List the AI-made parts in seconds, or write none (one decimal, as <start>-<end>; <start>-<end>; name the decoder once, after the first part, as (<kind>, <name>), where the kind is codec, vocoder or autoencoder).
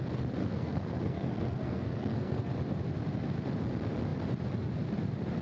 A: 0.4-2.5 (codec, SNAC)